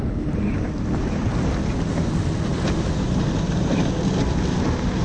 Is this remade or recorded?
recorded